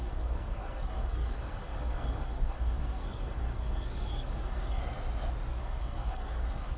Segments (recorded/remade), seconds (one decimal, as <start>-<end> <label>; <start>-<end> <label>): 0.0-4.8 remade; 4.8-5.6 recorded; 5.6-6.8 remade